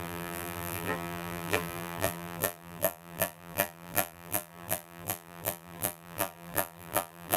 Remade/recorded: remade